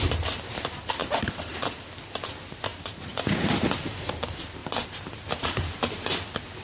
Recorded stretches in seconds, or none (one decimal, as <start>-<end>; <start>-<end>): 0.0-1.0; 2.3-2.7; 4.1-4.6; 5.9-6.6

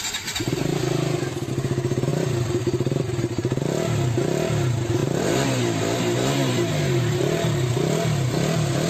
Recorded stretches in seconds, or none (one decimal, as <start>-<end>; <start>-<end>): 0.0-2.1; 3.4-5.0; 7.9-8.9